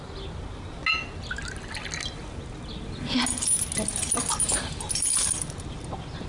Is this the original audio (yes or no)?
yes